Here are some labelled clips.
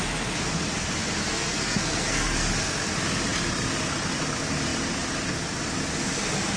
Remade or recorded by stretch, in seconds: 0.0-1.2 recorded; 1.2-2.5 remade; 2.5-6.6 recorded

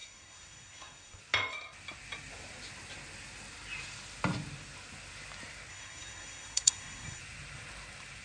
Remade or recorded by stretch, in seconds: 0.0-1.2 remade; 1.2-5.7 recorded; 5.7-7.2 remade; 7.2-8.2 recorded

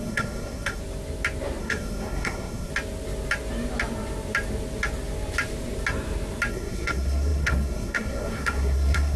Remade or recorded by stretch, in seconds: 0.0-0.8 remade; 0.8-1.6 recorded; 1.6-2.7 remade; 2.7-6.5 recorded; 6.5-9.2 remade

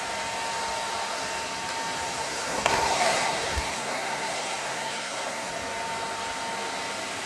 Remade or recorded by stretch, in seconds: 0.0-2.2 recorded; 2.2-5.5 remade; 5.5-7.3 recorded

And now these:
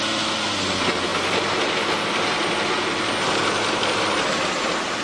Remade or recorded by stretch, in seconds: 0.0-5.0 recorded